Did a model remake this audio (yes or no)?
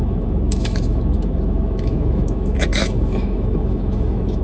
yes